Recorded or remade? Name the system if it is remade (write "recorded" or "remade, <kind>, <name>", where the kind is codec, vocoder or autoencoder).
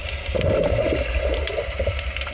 recorded